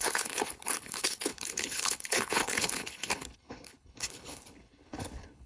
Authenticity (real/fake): fake